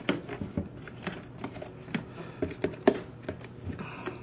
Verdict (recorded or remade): recorded